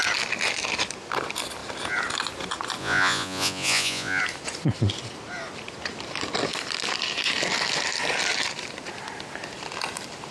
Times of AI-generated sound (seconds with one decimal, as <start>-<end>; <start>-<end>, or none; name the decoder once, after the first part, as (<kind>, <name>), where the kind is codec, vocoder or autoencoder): 2.8-4.2 (vocoder, Vocos)